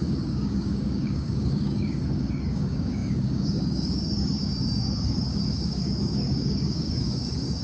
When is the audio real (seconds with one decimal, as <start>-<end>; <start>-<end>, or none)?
none